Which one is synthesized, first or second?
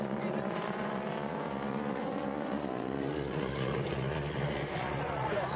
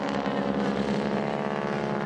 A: first